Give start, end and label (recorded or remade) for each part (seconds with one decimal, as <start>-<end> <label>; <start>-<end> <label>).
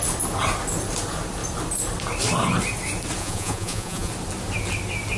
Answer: 0.0-3.2 recorded; 3.2-4.1 remade; 4.1-5.2 recorded